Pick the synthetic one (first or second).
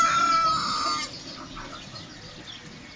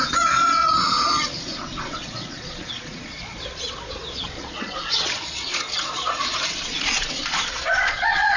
second